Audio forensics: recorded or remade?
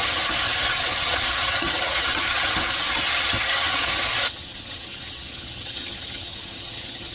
remade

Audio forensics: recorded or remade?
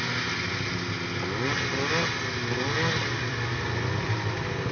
recorded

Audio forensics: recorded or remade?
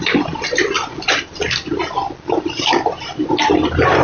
recorded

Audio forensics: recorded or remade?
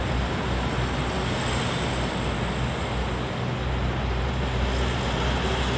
recorded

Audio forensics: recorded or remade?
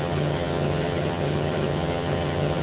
remade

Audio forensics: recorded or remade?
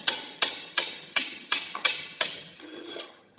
remade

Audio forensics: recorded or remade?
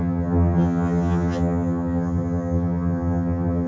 remade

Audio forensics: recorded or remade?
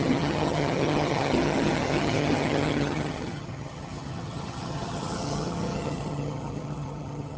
remade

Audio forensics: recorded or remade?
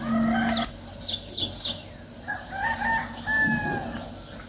recorded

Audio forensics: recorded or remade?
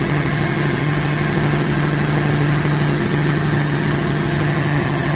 remade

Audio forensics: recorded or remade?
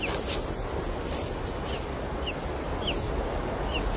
recorded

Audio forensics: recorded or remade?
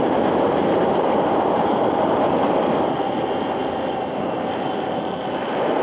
recorded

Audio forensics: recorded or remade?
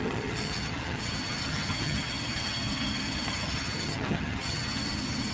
remade